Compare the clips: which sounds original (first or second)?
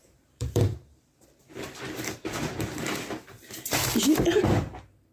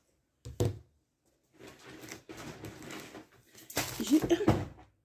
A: second